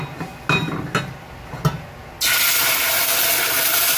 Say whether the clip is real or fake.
real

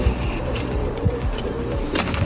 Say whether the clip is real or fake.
fake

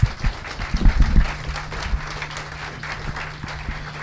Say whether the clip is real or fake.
real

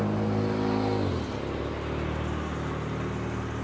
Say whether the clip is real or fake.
real